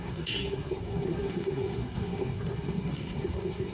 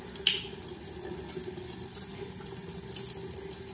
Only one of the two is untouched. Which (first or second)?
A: second